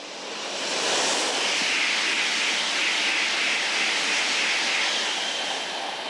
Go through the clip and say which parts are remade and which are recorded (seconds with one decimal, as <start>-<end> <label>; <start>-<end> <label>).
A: 0.0-6.1 recorded